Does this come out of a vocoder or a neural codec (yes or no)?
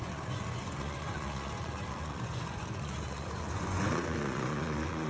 yes